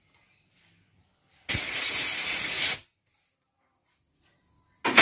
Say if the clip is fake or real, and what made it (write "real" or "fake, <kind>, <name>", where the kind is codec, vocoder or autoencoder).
real